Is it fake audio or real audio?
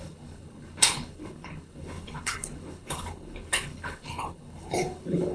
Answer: fake